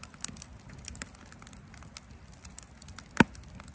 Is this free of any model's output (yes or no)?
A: yes